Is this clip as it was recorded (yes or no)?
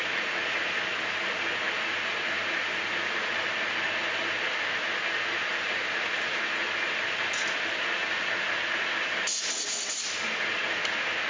yes